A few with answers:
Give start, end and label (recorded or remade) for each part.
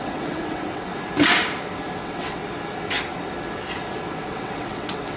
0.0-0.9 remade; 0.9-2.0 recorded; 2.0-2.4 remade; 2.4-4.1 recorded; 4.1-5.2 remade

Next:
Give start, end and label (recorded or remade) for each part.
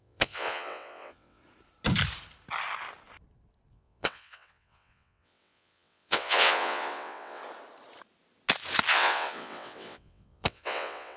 0.0-1.4 remade; 1.4-3.7 recorded; 3.7-7.4 remade; 7.4-8.9 recorded; 8.9-11.2 remade